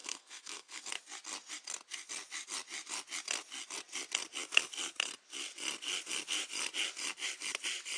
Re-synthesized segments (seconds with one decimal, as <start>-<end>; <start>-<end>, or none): 0.0-0.8